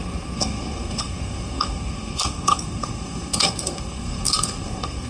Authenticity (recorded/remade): remade